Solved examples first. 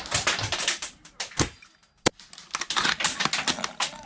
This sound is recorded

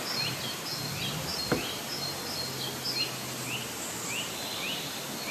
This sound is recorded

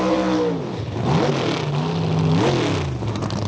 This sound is recorded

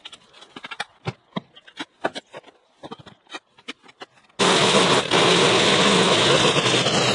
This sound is recorded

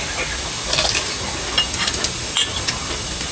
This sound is recorded